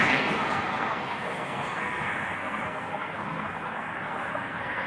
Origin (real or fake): fake